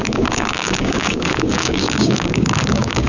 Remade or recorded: remade